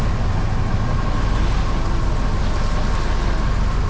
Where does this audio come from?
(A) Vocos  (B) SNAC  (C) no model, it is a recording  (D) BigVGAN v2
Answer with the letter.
C